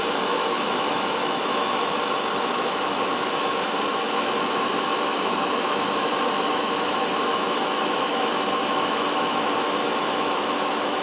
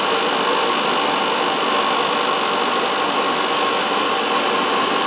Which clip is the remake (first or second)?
first